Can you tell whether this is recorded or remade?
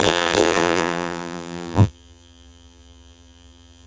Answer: remade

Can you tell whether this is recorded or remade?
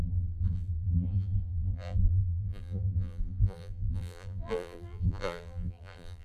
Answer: remade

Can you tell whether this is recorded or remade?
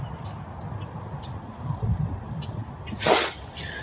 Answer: remade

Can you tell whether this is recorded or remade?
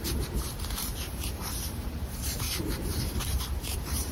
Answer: remade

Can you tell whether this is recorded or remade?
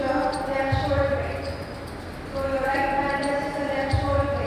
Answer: recorded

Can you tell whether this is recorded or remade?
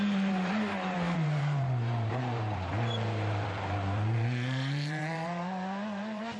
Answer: remade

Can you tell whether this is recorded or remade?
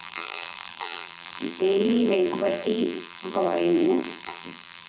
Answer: remade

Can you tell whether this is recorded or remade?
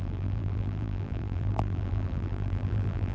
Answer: remade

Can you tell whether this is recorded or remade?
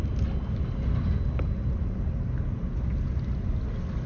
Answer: recorded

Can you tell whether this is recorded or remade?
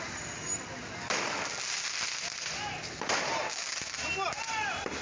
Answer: recorded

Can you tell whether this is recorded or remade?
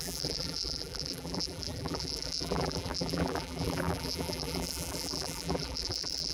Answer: remade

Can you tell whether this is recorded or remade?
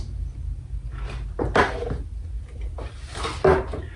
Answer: recorded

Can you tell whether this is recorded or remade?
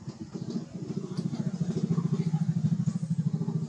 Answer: recorded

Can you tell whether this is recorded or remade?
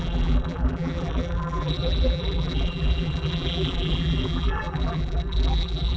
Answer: remade